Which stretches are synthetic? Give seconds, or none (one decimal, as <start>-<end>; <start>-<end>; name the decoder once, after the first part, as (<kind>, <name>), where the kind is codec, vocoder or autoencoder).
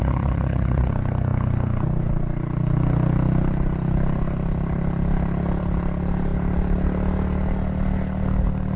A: 0.0-0.9 (vocoder, Vocos)